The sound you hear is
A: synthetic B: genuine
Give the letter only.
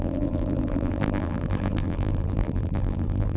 A